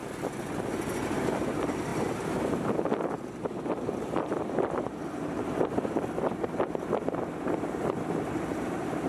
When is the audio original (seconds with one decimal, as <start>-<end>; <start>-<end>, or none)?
0.0-0.7